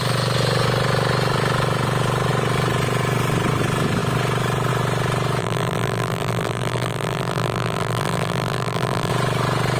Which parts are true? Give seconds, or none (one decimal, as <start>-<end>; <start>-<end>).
0.0-5.4; 9.1-9.8